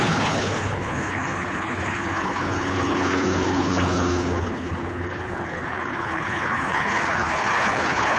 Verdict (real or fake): fake